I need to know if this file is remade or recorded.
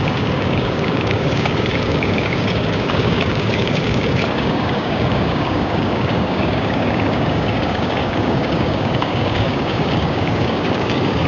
remade